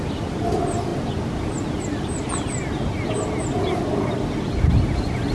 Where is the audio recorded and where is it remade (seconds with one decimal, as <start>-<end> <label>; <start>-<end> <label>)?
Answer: 0.0-5.3 recorded